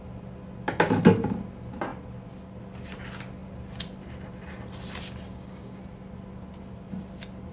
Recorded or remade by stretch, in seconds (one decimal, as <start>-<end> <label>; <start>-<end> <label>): 0.0-5.3 recorded; 5.3-5.8 remade; 5.8-7.5 recorded